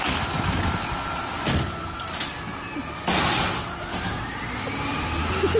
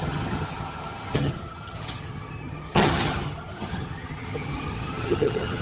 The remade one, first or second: second